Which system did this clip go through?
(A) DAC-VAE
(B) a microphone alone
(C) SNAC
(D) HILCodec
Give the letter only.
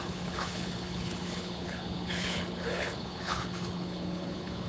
D